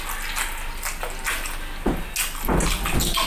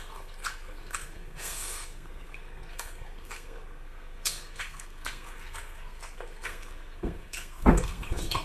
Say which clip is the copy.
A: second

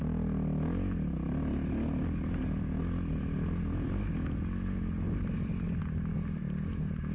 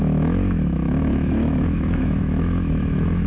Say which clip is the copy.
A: second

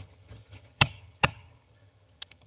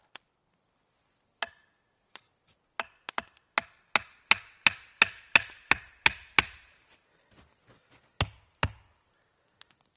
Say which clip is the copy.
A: first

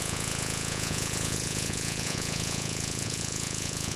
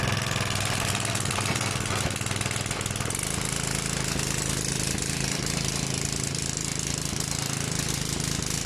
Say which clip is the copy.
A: first